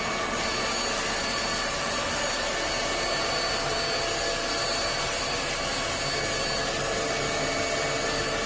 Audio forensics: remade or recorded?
recorded